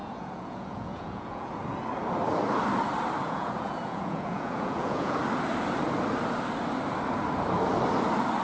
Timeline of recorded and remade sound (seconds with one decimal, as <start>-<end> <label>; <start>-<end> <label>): 0.0-1.6 remade; 1.6-3.2 recorded; 3.2-5.2 remade; 5.2-8.4 recorded

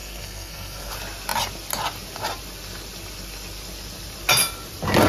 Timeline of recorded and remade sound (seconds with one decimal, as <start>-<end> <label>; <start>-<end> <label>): 0.0-0.9 remade; 0.9-5.1 recorded

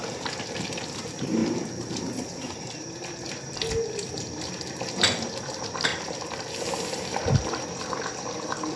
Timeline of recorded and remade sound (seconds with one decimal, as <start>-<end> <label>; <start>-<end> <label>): 0.0-1.4 remade; 1.4-5.0 recorded; 5.0-5.9 remade; 5.9-6.6 recorded; 6.6-8.8 remade

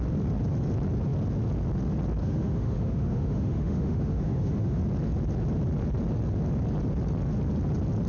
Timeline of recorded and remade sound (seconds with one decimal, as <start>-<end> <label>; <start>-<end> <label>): 0.0-2.2 recorded; 2.2-4.8 remade; 4.8-8.1 recorded